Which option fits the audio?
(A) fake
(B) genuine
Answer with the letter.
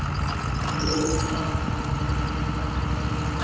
B